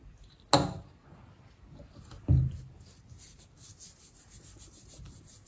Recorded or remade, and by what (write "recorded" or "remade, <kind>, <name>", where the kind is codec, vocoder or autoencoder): recorded